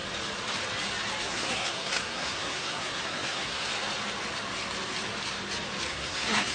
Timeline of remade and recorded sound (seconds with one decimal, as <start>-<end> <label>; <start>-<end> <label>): 0.0-1.2 recorded; 1.2-3.7 remade; 3.7-5.9 recorded; 5.9-6.5 remade